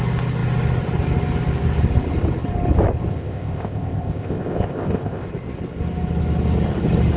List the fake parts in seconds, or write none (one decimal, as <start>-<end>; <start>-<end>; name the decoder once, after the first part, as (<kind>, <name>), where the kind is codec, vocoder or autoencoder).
3.1-5.3 (codec, ZipCodec)